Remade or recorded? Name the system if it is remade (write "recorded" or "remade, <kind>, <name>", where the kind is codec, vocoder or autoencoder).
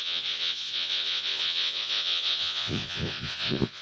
remade, vocoder, Vocos